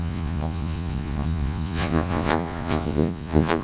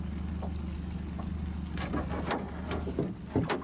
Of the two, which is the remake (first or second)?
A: first